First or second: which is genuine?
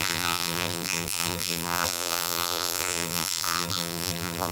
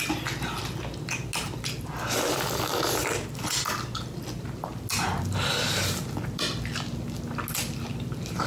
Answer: second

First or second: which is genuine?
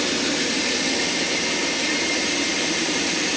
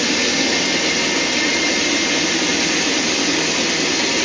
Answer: second